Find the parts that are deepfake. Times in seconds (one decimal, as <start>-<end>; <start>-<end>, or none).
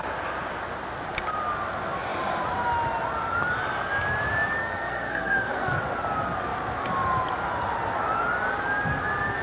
4.6-5.8